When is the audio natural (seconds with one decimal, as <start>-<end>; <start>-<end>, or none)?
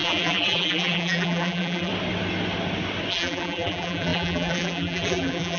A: 1.9-3.1